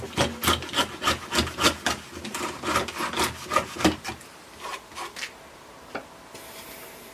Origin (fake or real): real